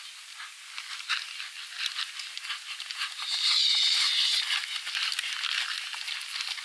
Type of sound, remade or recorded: recorded